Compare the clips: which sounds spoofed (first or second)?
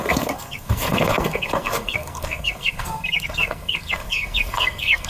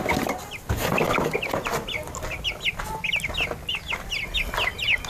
first